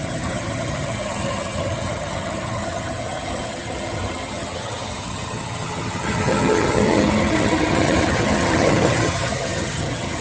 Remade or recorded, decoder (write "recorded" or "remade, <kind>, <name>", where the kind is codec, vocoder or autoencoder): remade, vocoder, HiFi-GAN